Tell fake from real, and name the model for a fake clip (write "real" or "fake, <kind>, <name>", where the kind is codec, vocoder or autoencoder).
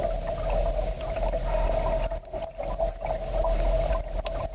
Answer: real